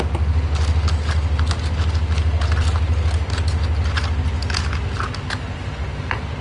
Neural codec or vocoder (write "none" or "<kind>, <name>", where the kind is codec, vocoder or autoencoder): none